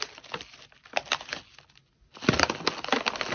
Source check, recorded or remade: recorded